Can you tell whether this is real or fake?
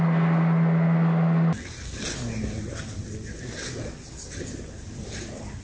real